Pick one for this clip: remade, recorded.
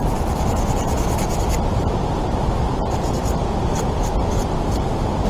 recorded